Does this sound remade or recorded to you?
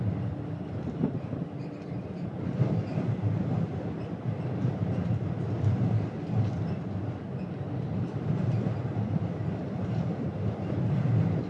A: recorded